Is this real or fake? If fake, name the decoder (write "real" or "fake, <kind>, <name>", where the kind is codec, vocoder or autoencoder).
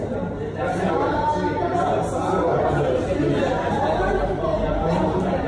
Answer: real